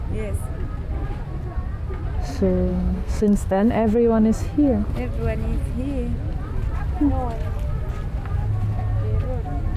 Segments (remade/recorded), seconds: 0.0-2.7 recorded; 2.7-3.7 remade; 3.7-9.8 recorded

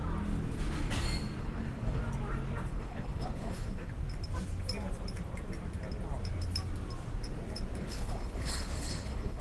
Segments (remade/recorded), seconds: 0.0-1.4 recorded; 1.4-2.0 remade; 2.0-2.7 recorded; 2.7-3.9 remade; 3.9-7.8 recorded; 7.8-9.4 remade

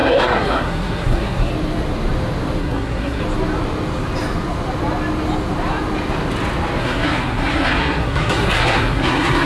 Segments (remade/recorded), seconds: 0.0-1.5 remade; 1.5-2.6 recorded; 2.6-3.2 remade; 3.2-6.8 recorded; 6.8-9.5 remade

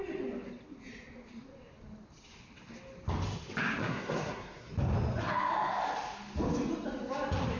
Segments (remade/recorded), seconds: 0.0-3.8 recorded; 3.8-4.7 remade; 4.7-7.6 recorded

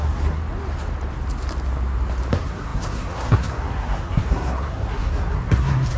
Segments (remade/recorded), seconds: 0.0-0.4 remade; 0.4-2.3 recorded; 2.3-6.0 remade

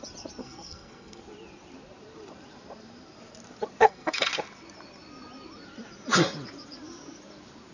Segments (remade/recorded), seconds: 0.0-0.4 recorded; 0.4-1.2 remade; 1.2-3.8 recorded; 3.8-4.3 remade; 4.3-7.7 recorded